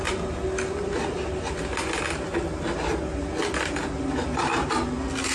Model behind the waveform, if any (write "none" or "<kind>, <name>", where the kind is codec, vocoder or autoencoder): none